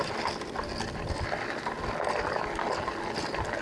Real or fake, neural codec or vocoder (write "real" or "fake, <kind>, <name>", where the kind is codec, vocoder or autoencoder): real